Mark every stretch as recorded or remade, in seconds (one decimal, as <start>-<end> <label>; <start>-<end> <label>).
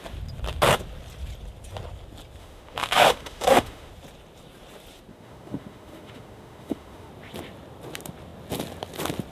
0.0-2.4 recorded; 2.4-3.9 remade; 3.9-5.1 recorded; 5.1-7.1 remade; 7.1-9.3 recorded